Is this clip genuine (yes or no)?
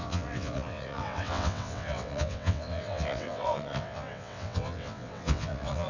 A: no